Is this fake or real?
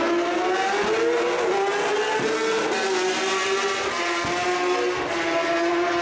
real